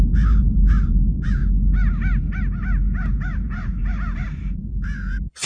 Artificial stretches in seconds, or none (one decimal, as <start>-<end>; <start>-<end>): 0.0-1.4; 3.1-5.5